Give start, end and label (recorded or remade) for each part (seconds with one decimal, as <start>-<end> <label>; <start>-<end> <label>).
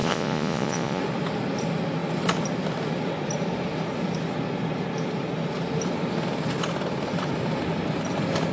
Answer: 0.0-1.0 remade; 1.0-8.5 recorded